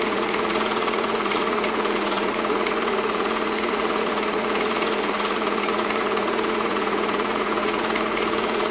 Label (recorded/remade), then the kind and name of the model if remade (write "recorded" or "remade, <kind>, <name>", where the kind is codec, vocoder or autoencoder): remade, vocoder, Vocos